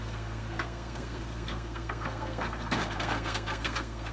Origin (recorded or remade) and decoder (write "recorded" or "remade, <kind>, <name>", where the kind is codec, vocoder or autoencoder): remade, codec, SNAC